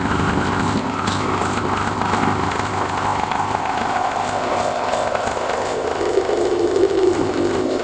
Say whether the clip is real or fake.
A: fake